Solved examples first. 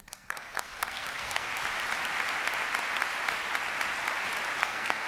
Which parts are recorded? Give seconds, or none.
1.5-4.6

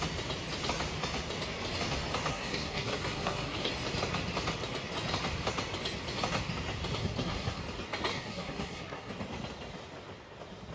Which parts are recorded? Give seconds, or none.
0.0-2.3; 3.7-7.0; 7.6-8.1; 9.1-10.7

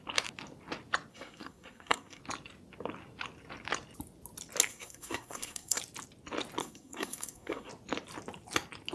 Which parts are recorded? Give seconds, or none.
0.0-1.1; 2.2-4.7; 5.8-6.6; 7.7-8.9

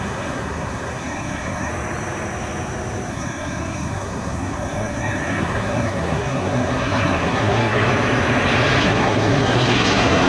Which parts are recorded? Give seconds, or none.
1.7-3.1; 7.9-8.8

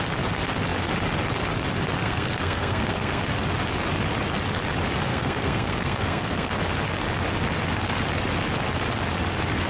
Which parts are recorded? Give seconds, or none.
0.0-2.0; 3.2-5.1; 6.5-9.7

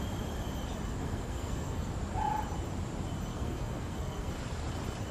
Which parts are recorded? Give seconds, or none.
0.0-1.0; 1.9-3.3; 4.3-5.1